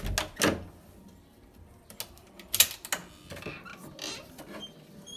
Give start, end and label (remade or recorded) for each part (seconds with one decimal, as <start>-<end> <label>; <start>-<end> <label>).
0.0-5.2 recorded